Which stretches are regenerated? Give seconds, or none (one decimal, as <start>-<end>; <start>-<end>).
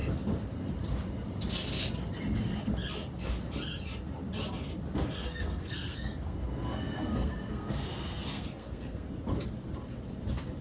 5.2-9.1